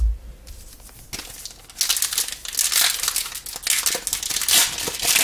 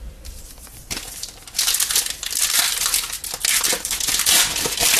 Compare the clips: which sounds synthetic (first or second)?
second